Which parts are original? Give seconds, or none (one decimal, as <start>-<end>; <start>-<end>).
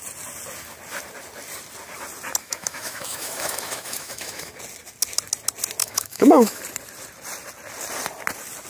0.0-2.4; 4.5-5.8; 6.6-8.7